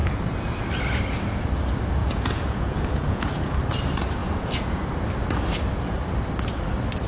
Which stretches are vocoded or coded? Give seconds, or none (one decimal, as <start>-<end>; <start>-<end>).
2.0-3.5; 4.2-4.8